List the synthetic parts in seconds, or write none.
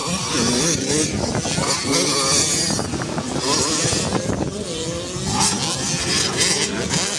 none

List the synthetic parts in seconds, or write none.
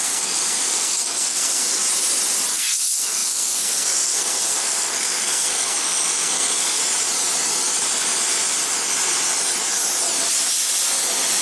0.0-1.8 (codec, SNAC); 2.5-6.8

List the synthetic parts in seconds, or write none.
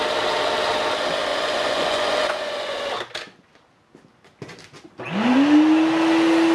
1.3-2.9 (vocoder, Vocos)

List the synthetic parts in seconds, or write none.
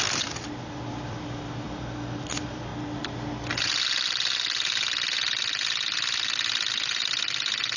0.0-2.7 (vocoder, BigVGAN v2)